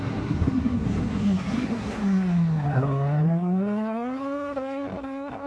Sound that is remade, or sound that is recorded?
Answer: remade